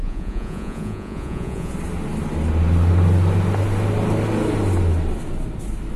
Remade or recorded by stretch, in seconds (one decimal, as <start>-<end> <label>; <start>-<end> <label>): 0.0-1.7 remade; 1.7-6.0 recorded